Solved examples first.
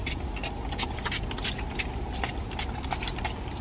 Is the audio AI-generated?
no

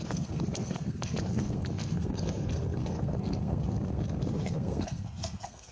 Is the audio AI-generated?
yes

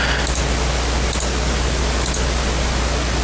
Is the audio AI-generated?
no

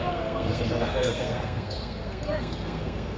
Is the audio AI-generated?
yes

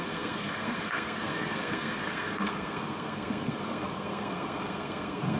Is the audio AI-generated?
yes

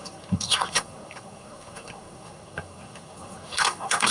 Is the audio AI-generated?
yes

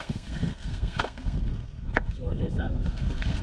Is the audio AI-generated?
yes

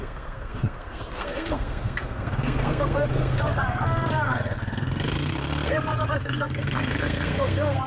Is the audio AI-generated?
yes